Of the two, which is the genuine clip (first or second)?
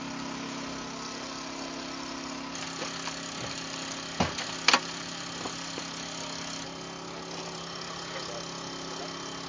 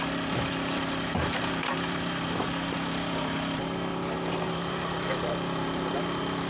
first